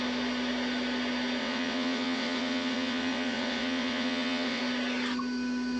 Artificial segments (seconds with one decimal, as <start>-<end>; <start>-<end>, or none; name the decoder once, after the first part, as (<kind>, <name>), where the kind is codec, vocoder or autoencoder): 1.4-4.6 (vocoder, WaveNeXt)